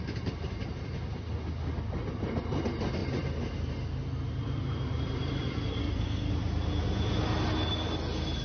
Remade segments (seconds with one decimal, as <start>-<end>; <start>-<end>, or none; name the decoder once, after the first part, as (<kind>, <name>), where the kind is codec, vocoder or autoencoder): 5.8-6.3 (codec, SNAC)